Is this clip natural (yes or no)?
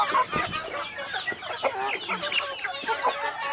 yes